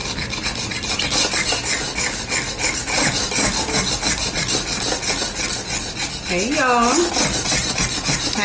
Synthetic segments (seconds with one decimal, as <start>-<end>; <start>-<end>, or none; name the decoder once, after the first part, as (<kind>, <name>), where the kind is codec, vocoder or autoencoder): none